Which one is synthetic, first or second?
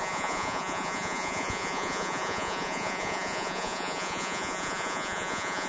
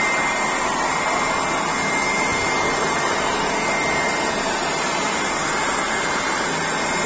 first